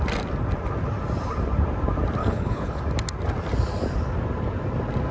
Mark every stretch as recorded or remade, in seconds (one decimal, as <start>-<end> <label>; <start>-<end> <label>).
0.0-2.2 recorded; 2.2-2.8 remade; 2.8-5.1 recorded